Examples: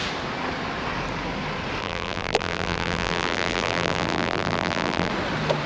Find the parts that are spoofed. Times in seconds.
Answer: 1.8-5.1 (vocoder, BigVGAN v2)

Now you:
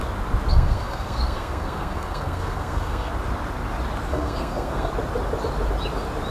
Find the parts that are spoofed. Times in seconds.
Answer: 0.5-3.1 (codec, SNAC); 4.1-4.9

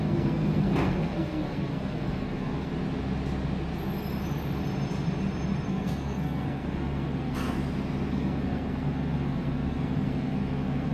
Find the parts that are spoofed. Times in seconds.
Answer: 0.0-2.7 (codec, SNAC); 5.7-7.6; 8.1-10.9

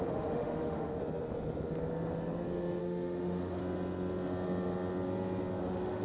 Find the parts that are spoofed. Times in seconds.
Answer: 0.0-1.0 (autoencoder, DAC-VAE); 2.8-3.6; 5.6-6.0

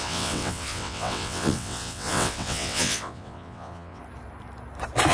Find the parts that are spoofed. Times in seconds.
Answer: 0.0-4.0 (vocoder, WaveNeXt)

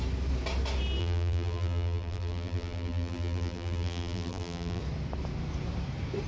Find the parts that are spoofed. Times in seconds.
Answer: 1.0-4.8 (vocoder, BigVGAN v2)

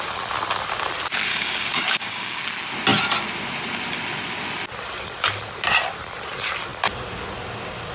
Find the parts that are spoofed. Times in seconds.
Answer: 1.3-2.4 (codec, DAC)